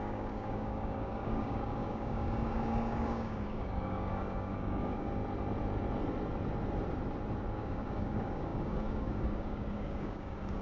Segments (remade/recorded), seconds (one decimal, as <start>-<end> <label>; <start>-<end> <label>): 0.0-5.2 remade; 5.2-7.5 recorded; 7.5-10.6 remade